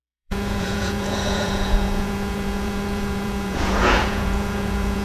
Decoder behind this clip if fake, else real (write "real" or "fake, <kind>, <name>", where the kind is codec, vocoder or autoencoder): fake, vocoder, Vocos